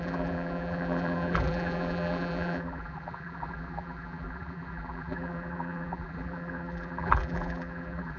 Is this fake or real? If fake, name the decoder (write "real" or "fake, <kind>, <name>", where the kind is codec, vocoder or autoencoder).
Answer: fake, vocoder, BigVGAN v2